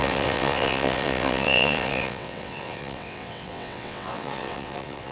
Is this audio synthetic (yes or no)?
yes